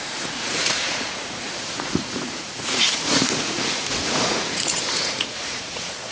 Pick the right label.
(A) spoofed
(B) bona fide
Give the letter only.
A